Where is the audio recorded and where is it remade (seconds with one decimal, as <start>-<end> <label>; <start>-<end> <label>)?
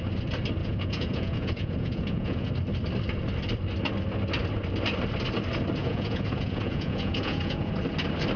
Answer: 0.0-0.6 recorded; 0.6-2.5 remade; 2.5-5.8 recorded; 5.8-7.7 remade; 7.7-8.4 recorded